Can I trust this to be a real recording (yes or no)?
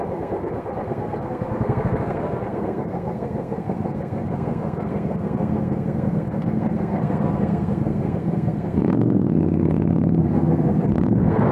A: no